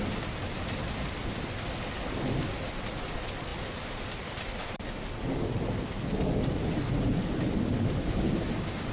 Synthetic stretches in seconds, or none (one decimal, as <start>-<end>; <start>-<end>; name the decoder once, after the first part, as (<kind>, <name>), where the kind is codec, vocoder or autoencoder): none

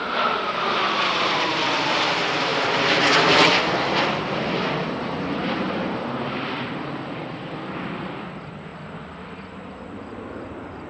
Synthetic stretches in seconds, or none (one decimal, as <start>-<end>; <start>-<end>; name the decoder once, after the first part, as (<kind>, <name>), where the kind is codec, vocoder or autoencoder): none

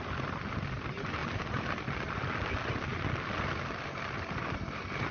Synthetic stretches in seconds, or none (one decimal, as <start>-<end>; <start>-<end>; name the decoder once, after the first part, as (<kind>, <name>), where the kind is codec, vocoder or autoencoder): none

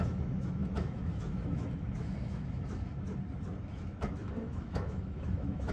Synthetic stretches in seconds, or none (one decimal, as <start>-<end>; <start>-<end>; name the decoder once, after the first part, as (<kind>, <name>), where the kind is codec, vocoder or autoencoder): 0.0-2.9 (autoencoder, DAC-VAE); 3.6-5.7

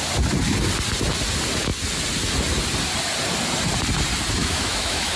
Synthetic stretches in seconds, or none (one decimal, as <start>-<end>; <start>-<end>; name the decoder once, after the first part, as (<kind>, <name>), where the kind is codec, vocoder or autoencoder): 4.4-5.2 (autoencoder, DAC-VAE)

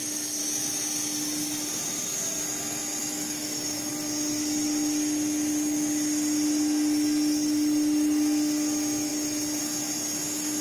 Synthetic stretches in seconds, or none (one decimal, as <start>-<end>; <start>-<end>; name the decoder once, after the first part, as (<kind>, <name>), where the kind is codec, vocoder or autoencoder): 0.4-0.9 (autoencoder, DAC-VAE); 3.0-3.9

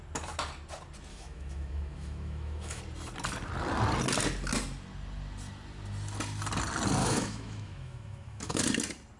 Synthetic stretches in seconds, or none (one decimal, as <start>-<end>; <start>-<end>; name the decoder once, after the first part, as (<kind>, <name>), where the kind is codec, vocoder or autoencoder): 1.1-2.8 (autoencoder, DAC-VAE); 7.0-8.6